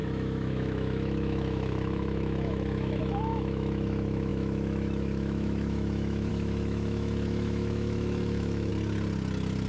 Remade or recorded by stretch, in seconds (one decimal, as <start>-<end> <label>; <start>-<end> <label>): 0.0-8.7 remade; 8.7-9.7 recorded